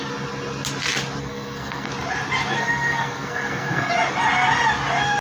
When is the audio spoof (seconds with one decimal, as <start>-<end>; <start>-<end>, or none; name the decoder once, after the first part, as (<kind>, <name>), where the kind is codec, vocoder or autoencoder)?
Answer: 1.2-1.9 (codec, SNAC); 2.6-3.9